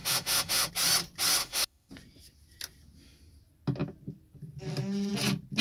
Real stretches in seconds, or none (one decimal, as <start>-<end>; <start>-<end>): 0.7-1.4; 1.9-5.6